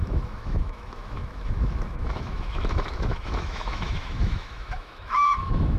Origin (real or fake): fake